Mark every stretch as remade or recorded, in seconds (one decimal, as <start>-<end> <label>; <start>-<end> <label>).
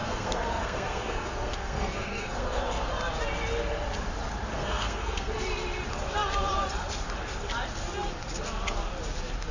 0.0-2.9 remade; 2.9-4.5 recorded; 4.5-5.3 remade; 5.3-9.5 recorded